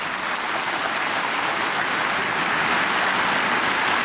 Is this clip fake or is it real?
real